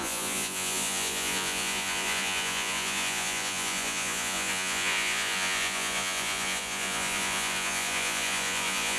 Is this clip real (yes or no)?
no